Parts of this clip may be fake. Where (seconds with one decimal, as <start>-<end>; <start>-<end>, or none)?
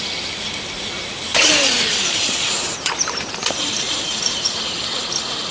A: 1.3-4.6